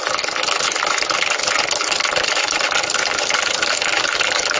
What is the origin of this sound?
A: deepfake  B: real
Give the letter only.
B